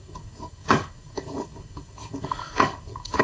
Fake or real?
fake